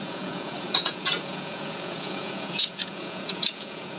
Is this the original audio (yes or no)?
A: no